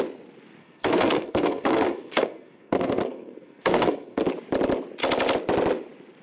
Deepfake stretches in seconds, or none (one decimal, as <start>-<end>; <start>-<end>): 0.6-4.3